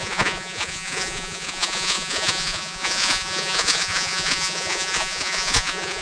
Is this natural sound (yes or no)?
no